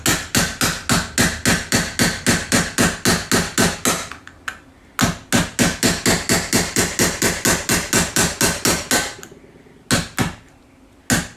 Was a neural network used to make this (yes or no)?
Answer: no